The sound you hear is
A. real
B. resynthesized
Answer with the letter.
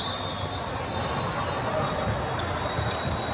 A